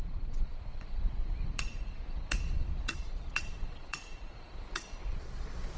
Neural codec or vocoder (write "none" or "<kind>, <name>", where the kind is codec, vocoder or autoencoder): vocoder, Vocos